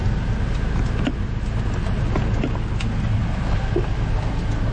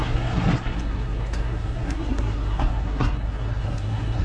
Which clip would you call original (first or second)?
first